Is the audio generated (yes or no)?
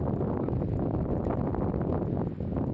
no